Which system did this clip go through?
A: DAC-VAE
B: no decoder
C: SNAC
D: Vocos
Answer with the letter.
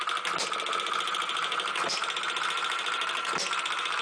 B